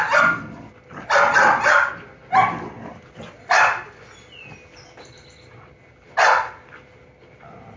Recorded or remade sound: recorded